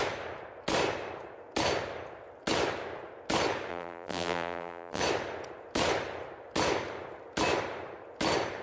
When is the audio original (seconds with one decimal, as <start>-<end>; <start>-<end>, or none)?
0.0-3.7; 5.0-8.6